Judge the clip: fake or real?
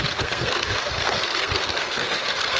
fake